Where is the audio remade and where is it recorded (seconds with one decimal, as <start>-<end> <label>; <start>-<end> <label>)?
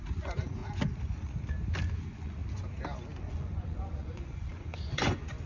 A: 0.0-0.6 remade; 0.6-2.0 recorded; 2.0-2.4 remade; 2.4-3.2 recorded; 3.2-5.5 remade